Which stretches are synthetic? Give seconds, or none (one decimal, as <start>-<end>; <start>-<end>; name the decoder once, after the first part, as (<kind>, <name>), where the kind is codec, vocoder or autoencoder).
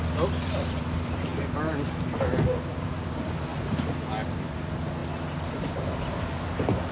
0.0-1.3 (vocoder, BigVGAN v2); 2.7-3.5; 4.4-5.0